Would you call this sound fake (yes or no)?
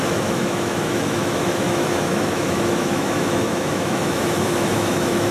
yes